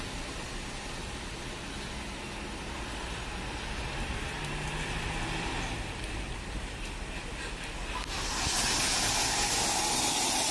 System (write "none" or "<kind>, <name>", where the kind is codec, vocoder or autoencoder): none